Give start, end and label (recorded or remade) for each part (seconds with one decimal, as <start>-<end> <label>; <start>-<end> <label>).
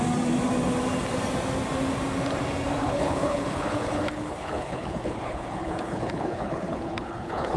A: 0.0-2.8 recorded; 2.8-7.6 remade